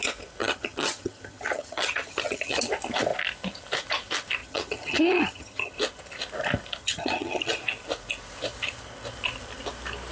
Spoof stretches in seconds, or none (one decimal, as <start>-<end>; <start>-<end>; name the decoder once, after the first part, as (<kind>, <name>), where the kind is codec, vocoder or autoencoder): 0.4-2.7 (vocoder, HiFi-GAN); 4.4-5.7; 6.8-7.6

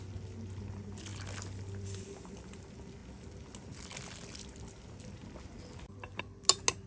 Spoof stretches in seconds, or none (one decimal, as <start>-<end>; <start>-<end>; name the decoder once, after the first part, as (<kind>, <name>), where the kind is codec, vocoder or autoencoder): none

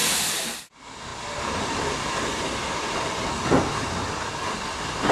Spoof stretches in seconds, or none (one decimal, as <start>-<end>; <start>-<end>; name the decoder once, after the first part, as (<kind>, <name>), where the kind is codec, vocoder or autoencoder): none

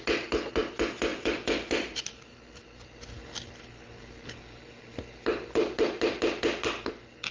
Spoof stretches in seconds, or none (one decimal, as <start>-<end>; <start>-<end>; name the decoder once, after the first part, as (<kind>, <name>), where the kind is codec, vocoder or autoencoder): 1.1-2.6 (vocoder, BigVGAN v2)

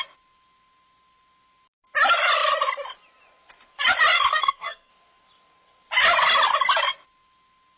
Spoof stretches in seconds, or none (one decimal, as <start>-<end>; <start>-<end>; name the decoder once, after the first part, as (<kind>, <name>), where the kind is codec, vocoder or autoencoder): 4.3-4.9 (codec, SNAC)

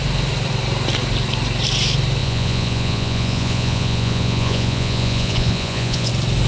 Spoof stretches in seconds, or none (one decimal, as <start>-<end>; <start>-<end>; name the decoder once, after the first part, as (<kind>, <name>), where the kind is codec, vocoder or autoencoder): 2.2-6.1 (vocoder, Vocos)

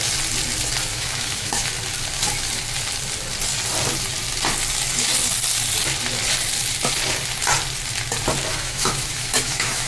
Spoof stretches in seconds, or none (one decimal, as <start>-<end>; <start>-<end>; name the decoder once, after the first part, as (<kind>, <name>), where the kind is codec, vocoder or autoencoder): 0.9-1.7 (autoencoder, DAC-VAE); 8.5-9.9

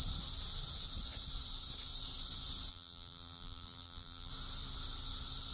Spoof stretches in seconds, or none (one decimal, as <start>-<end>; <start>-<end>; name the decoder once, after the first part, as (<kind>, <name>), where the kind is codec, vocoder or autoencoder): 2.7-4.3 (vocoder, BigVGAN v2)